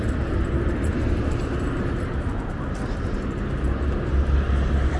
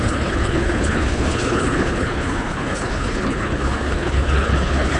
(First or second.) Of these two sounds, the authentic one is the first